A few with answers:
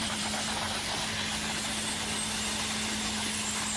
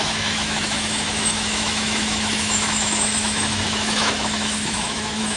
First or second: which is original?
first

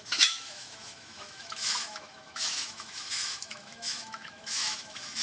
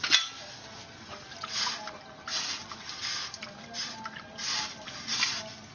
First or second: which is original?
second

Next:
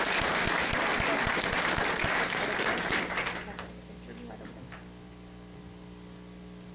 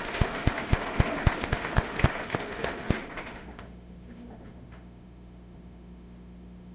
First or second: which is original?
first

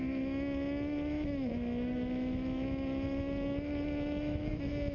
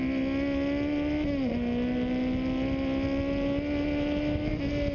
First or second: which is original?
second